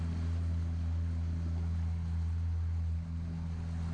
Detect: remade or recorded recorded